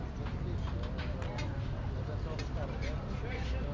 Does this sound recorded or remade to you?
recorded